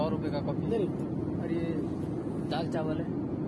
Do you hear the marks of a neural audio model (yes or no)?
no